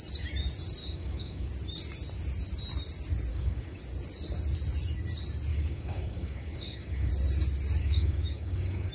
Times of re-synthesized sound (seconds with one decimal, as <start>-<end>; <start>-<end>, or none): 0.8-1.5; 3.3-3.8; 5.5-7.1; 7.8-8.9